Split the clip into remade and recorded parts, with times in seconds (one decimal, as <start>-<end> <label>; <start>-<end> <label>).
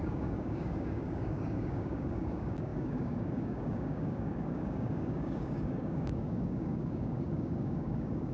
0.0-8.3 remade